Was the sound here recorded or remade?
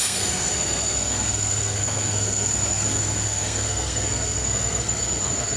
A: remade